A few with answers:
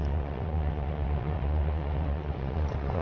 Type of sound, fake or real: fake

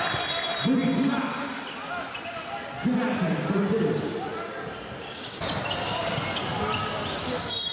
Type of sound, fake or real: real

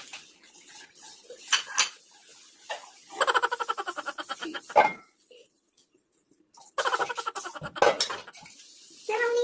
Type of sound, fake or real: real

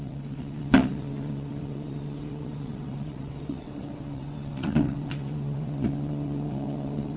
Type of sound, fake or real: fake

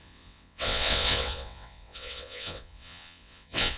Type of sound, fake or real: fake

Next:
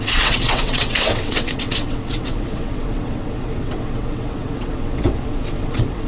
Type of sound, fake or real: fake